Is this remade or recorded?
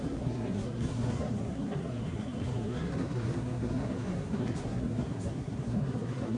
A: remade